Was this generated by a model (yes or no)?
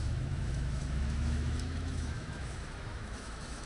yes